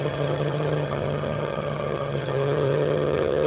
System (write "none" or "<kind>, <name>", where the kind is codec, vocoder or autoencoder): vocoder, HiFi-GAN